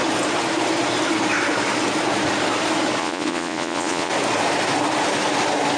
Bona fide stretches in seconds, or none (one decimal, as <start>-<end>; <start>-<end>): 0.0-3.0; 4.1-5.8